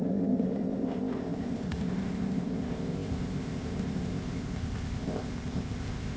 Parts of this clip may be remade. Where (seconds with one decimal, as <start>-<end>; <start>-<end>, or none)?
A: 0.0-6.2